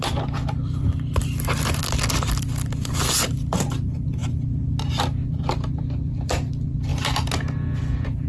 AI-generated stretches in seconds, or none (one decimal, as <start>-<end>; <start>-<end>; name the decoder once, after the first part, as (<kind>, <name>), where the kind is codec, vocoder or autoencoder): 0.0-4.2 (vocoder, BigVGAN v2); 5.0-6.9; 7.8-8.3